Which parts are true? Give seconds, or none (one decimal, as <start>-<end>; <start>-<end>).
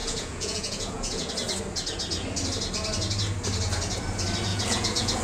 1.3-4.5